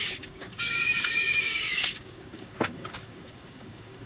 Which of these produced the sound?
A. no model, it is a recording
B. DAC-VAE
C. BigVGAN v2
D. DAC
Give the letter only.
D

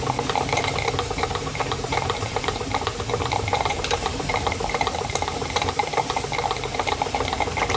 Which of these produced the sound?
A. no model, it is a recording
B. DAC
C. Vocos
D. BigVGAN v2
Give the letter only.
D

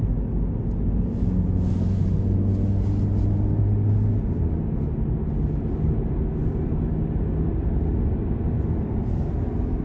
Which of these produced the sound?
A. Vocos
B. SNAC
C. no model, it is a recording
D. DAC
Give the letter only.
C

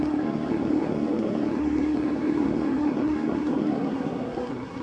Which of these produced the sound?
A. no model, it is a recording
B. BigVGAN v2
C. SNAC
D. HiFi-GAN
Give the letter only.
C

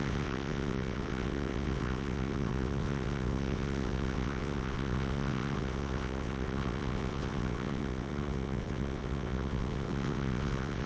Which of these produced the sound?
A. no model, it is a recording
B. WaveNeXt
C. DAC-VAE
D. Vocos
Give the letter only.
B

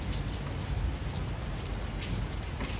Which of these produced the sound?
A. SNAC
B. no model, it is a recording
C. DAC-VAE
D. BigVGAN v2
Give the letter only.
B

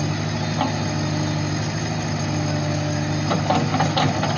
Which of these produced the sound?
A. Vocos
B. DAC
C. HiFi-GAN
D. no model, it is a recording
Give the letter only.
D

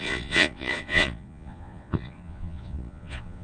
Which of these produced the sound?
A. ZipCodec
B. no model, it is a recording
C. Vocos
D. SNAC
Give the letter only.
C